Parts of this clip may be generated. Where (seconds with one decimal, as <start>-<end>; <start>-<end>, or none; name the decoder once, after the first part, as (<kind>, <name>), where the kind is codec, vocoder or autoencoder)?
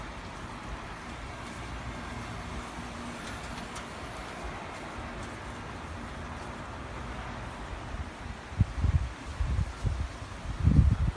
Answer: none